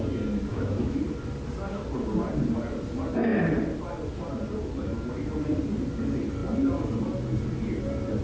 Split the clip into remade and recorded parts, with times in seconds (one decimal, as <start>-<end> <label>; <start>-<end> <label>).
0.0-0.5 recorded; 0.5-1.0 remade; 1.0-8.2 recorded